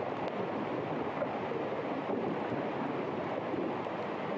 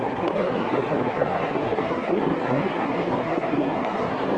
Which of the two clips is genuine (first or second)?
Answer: first